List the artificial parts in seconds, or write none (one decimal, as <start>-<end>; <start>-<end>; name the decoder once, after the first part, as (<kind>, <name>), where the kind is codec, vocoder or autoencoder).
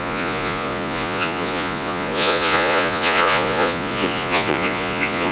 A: 0.0-5.3 (vocoder, Vocos)